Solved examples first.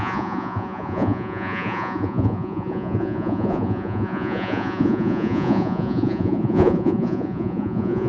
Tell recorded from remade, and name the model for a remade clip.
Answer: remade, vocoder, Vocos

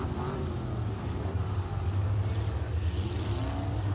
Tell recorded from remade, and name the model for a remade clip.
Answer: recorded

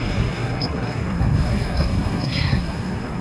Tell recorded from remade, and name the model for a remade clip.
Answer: remade, codec, SNAC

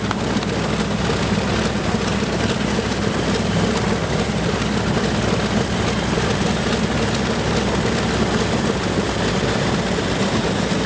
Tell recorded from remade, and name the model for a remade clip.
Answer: recorded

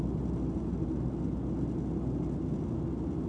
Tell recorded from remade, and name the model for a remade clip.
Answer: recorded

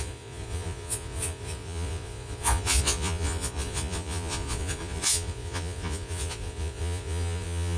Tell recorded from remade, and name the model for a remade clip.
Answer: remade, vocoder, Vocos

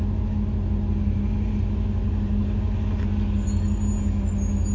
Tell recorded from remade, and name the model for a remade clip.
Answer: recorded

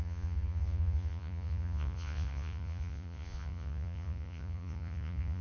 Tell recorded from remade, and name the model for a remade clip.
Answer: remade, vocoder, Vocos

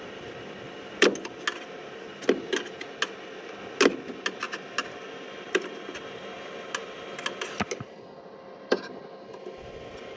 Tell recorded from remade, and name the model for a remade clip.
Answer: recorded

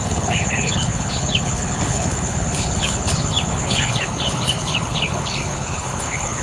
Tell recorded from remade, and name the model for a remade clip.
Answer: remade, codec, HILCodec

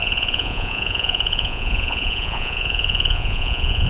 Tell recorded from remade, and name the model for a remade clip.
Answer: remade, vocoder, Vocos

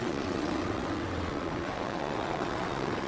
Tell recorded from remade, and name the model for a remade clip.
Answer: remade, vocoder, WaveNeXt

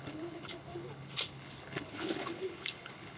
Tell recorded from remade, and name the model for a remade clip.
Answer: remade, codec, HILCodec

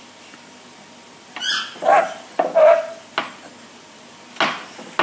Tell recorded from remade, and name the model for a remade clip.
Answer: recorded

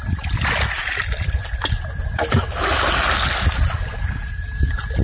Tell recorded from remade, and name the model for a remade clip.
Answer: recorded